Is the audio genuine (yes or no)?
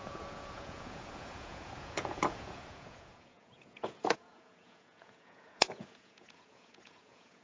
no